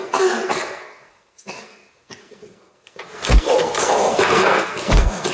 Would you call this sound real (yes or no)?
no